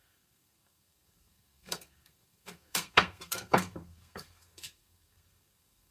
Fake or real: fake